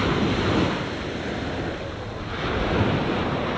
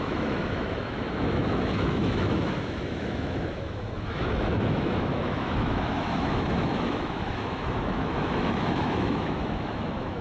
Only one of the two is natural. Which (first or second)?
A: first